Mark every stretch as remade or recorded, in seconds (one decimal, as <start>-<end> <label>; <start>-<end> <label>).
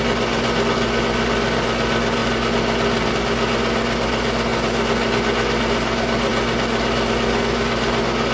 0.0-8.3 recorded